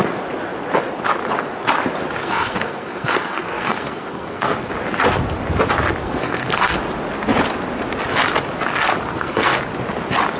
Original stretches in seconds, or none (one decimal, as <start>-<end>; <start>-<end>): 0.0-2.2; 4.7-6.0; 6.8-9.1; 9.6-10.4